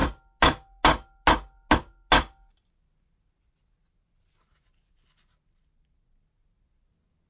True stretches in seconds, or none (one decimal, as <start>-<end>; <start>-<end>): 0.0-7.3